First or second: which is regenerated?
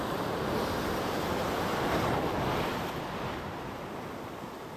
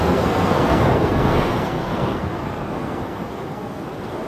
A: second